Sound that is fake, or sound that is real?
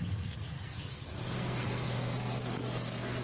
fake